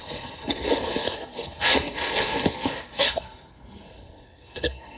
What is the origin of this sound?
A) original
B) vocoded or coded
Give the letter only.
B